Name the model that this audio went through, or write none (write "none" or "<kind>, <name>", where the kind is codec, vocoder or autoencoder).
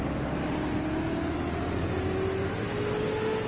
none